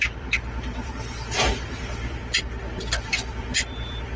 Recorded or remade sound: remade